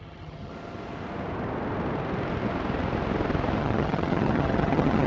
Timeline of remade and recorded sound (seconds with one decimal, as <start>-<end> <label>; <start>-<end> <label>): 0.0-0.5 remade; 0.5-3.6 recorded; 3.6-5.1 remade